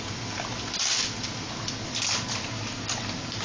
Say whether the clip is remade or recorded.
recorded